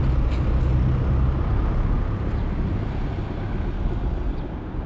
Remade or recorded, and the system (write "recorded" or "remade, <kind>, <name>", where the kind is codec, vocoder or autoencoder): recorded